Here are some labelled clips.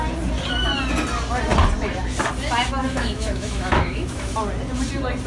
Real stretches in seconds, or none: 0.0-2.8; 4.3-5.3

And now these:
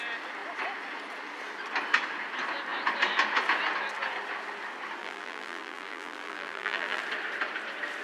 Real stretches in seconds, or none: 0.0-5.0; 7.0-8.0

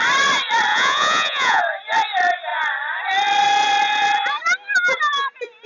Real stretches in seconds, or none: 0.0-0.7; 1.6-5.7

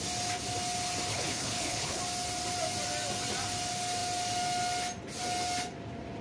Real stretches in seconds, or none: 0.0-1.1; 2.0-6.2